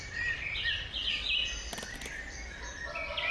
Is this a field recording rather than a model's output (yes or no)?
yes